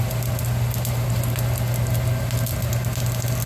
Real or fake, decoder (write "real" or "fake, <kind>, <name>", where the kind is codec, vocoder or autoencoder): real